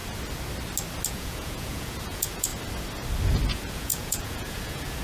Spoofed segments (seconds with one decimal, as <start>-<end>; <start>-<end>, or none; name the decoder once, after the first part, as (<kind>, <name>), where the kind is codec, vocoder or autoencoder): 1.1-2.5 (vocoder, Vocos); 3.5-5.0